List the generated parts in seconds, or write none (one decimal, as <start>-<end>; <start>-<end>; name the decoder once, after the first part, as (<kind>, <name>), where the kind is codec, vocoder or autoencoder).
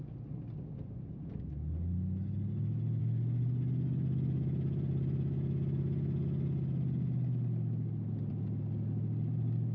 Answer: none